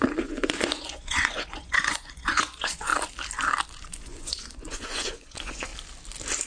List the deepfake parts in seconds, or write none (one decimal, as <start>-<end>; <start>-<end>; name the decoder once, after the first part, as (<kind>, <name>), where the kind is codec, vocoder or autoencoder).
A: 0.0-2.9 (vocoder, Vocos); 3.8-5.7